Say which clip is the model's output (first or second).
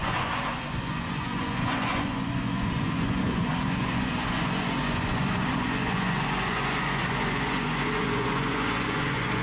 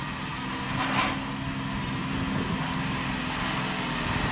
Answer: first